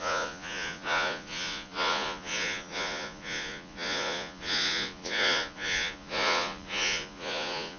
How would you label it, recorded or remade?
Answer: remade